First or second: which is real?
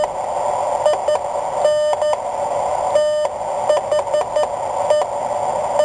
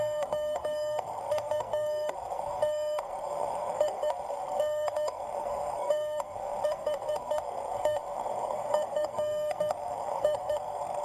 first